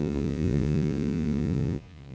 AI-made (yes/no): yes